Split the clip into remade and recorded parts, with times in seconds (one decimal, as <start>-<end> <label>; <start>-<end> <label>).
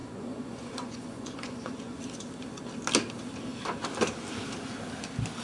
0.0-2.0 remade; 2.0-5.4 recorded